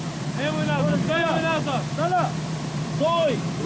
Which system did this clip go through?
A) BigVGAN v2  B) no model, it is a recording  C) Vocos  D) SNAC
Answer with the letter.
B